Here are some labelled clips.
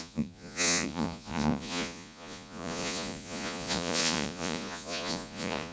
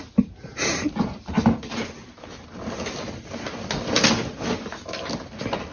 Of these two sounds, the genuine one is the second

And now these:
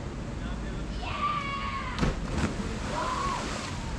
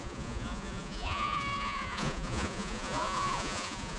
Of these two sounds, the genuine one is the first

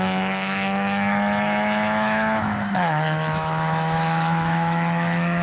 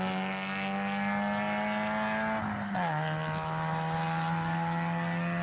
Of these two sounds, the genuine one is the second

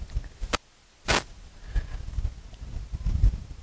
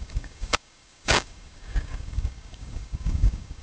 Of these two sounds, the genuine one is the first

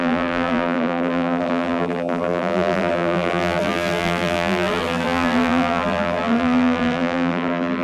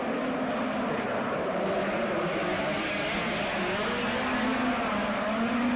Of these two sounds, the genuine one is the second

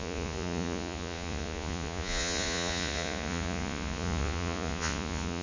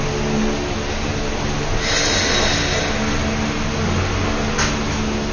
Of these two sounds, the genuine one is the second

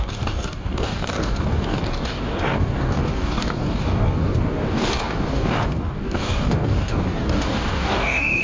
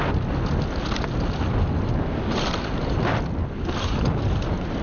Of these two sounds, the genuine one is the second